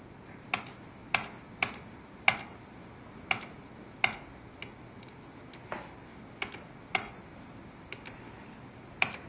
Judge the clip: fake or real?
real